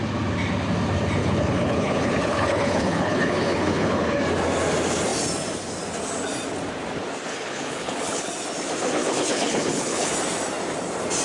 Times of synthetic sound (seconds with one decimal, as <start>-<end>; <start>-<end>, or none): 1.2-4.2; 7.3-8.3; 9.0-10.1